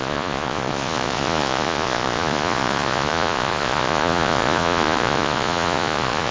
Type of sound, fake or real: fake